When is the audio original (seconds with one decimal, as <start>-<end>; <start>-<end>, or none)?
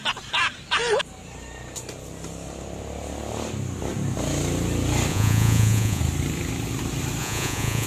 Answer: 0.0-5.1; 6.0-7.2